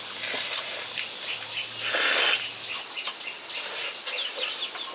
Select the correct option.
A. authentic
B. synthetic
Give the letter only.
A